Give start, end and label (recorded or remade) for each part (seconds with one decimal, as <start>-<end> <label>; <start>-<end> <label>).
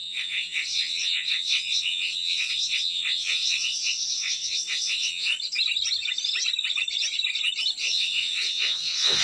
0.0-5.3 remade; 5.3-7.8 recorded; 7.8-9.2 remade